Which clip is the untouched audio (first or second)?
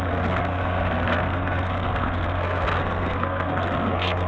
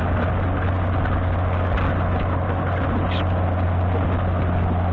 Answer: second